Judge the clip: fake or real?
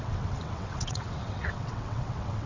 fake